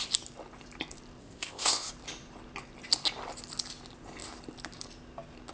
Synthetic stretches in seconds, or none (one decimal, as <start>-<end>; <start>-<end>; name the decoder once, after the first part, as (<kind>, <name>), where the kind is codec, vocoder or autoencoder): 1.2-1.9 (codec, ZipCodec)